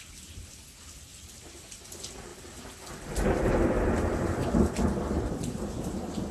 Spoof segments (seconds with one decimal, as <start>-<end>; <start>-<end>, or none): none